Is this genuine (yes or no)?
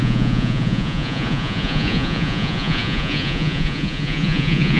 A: no